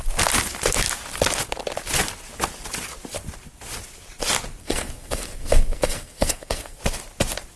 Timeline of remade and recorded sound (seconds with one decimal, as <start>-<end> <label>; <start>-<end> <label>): 0.0-4.6 recorded; 4.6-6.8 remade; 6.8-7.6 recorded

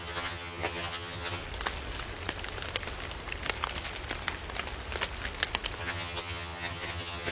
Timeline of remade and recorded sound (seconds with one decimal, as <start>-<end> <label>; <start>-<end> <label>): 0.0-1.4 remade; 1.4-5.8 recorded; 5.8-7.3 remade

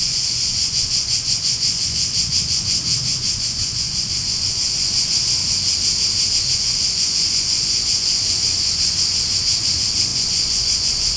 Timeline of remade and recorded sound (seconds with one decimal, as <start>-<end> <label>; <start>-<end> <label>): 0.0-5.4 remade; 5.4-6.3 recorded; 6.3-11.2 remade

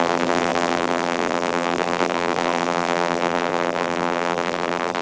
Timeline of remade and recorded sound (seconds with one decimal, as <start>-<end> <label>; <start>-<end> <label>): 0.0-5.0 remade

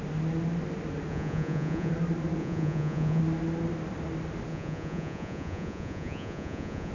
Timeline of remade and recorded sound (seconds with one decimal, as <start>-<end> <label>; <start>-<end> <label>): 0.0-1.1 recorded; 1.1-1.9 remade; 1.9-2.4 recorded; 2.4-3.2 remade; 3.2-4.5 recorded; 4.5-6.9 remade

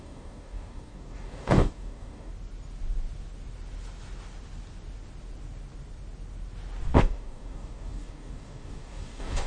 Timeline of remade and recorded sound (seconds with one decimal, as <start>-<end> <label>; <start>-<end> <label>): 0.0-2.3 remade; 2.3-7.0 recorded; 7.0-9.5 remade

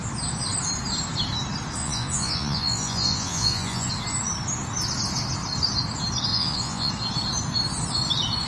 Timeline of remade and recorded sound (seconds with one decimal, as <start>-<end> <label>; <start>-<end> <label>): 0.0-1.8 recorded; 1.8-3.9 remade; 3.9-6.3 recorded; 6.3-6.9 remade; 6.9-8.5 recorded

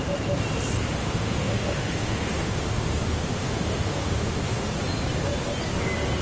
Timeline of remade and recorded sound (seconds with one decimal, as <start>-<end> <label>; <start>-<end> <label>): 0.0-1.0 recorded; 1.0-4.7 remade; 4.7-6.2 recorded